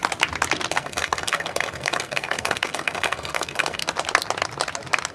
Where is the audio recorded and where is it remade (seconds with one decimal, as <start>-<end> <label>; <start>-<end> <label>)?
0.0-0.7 recorded; 0.7-3.8 remade; 3.8-5.1 recorded